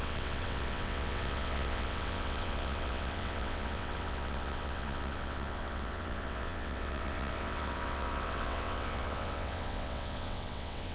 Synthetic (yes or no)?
yes